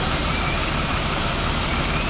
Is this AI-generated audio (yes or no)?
yes